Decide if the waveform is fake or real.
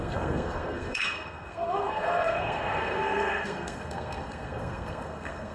fake